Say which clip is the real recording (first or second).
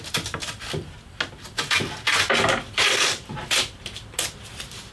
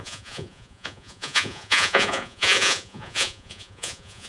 first